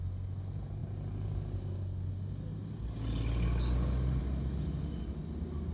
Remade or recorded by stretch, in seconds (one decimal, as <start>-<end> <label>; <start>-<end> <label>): 0.0-5.7 recorded